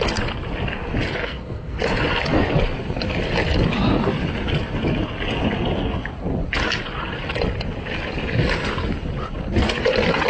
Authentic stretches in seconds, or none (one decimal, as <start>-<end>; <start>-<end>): 0.0-1.2; 1.8-10.3